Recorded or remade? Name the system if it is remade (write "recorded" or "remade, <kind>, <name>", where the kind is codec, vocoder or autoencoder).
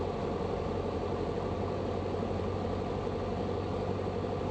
recorded